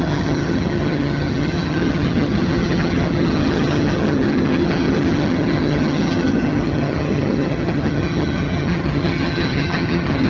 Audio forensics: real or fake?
fake